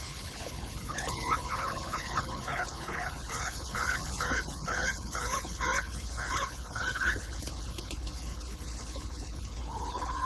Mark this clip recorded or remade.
remade